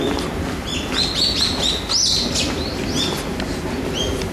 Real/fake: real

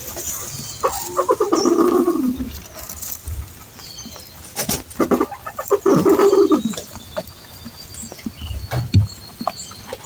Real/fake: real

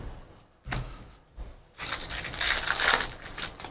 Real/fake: real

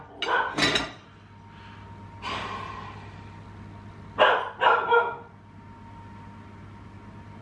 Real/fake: real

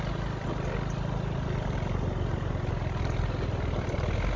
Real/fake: real